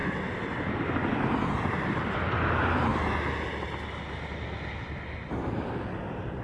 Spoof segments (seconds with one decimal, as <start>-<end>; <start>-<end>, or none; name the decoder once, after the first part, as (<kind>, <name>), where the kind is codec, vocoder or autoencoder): 1.6-2.9 (vocoder, BigVGAN v2); 5.3-6.4